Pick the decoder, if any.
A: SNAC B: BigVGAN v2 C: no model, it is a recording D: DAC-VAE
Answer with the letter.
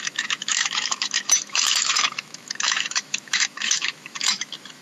D